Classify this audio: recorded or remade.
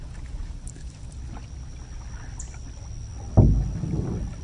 recorded